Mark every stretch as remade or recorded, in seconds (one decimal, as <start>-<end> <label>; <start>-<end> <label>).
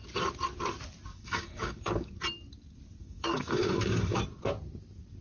0.0-1.1 recorded; 1.1-2.1 remade; 2.1-3.0 recorded; 3.0-4.2 remade; 4.2-5.2 recorded